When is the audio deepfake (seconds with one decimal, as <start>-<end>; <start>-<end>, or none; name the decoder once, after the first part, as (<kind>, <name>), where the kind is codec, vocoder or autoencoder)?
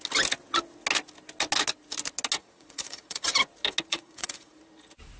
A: 2.4-3.3 (vocoder, Vocos); 3.9-4.6